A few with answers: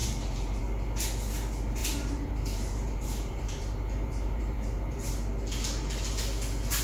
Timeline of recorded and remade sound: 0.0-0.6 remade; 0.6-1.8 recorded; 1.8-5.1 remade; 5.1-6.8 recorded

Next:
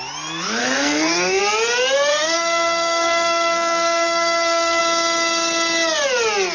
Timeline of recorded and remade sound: 0.0-0.6 recorded; 0.6-1.4 remade; 1.4-2.1 recorded; 2.1-4.8 remade; 4.8-6.5 recorded

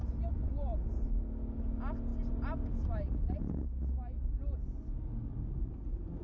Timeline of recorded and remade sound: 0.0-6.2 recorded